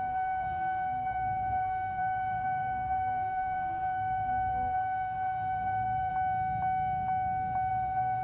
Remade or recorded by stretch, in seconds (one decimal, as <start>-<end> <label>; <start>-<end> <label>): 0.0-6.1 remade; 6.1-7.7 recorded; 7.7-8.2 remade